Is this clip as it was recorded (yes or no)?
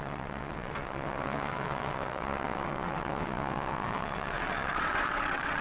no